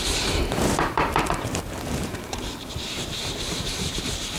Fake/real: fake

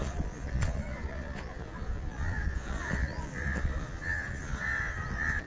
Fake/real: fake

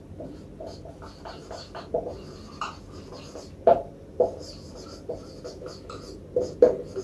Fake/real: real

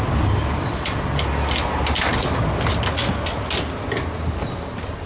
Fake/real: real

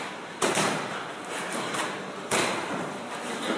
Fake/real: fake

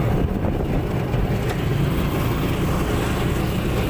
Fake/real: real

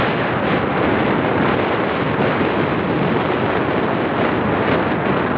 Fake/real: real